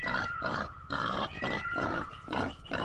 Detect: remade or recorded remade